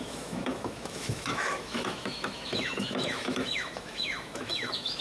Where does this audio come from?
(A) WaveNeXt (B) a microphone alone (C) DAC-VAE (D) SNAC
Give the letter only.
C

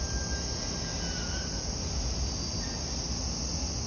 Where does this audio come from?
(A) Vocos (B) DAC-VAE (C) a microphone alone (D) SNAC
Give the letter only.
C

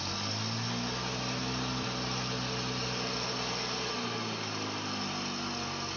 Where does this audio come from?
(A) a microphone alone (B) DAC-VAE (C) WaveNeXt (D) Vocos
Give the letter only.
A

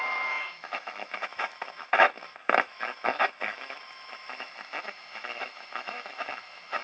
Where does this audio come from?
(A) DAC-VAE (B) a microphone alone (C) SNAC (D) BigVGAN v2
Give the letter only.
A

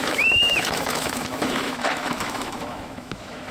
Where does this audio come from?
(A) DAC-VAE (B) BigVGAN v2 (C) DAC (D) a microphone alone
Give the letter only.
A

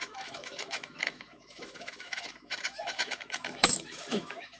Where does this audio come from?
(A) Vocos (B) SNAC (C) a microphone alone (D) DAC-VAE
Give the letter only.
D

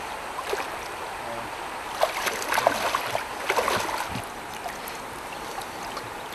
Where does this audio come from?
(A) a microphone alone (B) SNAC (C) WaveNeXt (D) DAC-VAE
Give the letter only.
A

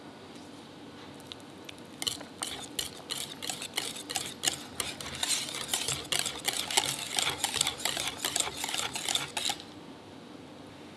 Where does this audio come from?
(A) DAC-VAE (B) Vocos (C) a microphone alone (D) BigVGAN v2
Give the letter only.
C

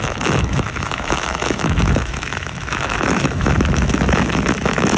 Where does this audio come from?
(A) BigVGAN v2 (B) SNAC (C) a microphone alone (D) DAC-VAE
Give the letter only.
D